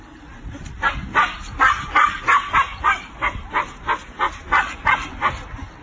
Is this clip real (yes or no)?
yes